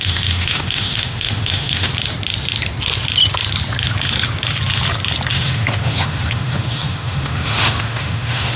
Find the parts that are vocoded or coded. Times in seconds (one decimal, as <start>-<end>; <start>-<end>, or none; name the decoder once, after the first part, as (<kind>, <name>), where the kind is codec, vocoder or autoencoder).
0.0-1.9 (autoencoder, DAC-VAE); 5.3-8.6